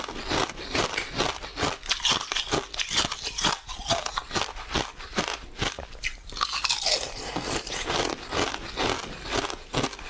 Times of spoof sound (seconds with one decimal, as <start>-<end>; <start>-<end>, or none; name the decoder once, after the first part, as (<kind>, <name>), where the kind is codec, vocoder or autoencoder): none